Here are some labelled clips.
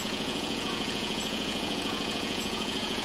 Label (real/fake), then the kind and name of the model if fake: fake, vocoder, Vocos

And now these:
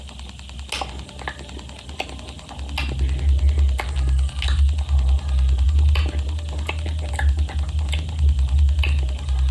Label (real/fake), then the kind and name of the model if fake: real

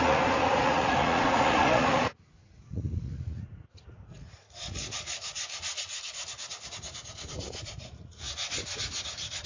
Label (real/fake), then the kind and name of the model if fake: fake, vocoder, Vocos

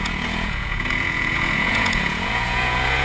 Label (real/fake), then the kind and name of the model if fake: fake, vocoder, Vocos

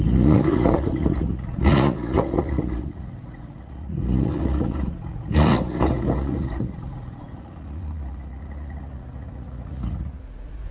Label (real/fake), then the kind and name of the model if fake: fake, vocoder, Vocos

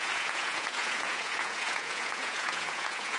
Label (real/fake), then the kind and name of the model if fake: fake, vocoder, Vocos